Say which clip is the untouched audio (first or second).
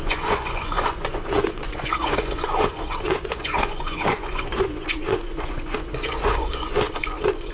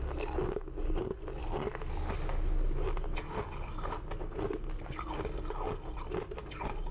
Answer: second